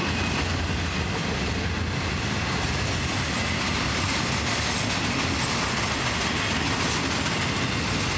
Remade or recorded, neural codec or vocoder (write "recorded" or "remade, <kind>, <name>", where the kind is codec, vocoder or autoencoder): recorded